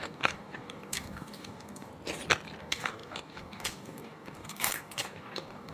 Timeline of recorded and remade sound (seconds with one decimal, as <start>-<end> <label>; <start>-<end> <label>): 0.0-1.9 remade; 1.9-2.6 recorded; 2.6-5.7 remade